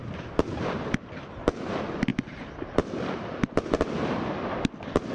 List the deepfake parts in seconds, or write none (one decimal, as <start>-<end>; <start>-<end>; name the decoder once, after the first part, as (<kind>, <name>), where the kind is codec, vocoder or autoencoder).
none